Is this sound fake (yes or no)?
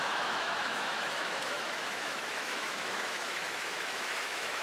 yes